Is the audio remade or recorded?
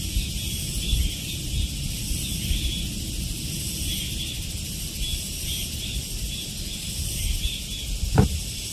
recorded